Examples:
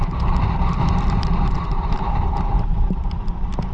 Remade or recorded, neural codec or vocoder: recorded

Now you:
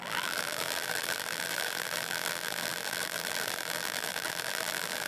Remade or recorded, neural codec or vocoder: remade, vocoder, BigVGAN v2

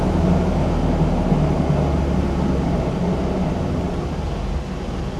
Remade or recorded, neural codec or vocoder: recorded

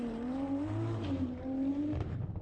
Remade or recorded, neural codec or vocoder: remade, vocoder, BigVGAN v2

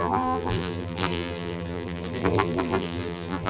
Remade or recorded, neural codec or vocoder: remade, vocoder, BigVGAN v2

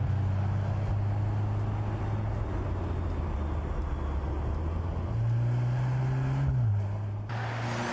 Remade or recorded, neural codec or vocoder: recorded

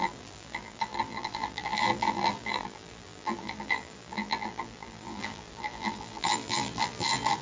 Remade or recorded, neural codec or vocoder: remade, vocoder, BigVGAN v2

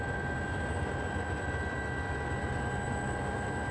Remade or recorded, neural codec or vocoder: recorded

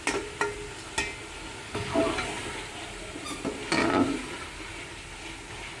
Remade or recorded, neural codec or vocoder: recorded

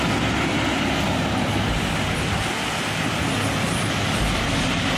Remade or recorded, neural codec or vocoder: recorded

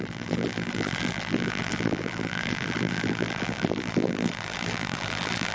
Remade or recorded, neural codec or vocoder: remade, vocoder, BigVGAN v2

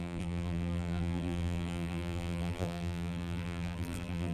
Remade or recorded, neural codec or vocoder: remade, vocoder, BigVGAN v2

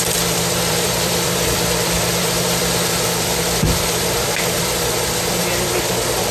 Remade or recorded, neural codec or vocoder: remade, vocoder, BigVGAN v2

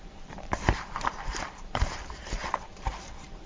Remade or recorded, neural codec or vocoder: remade, vocoder, BigVGAN v2